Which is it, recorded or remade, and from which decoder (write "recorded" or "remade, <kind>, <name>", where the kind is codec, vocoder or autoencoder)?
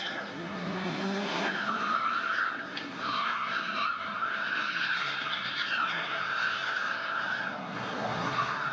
remade, codec, SNAC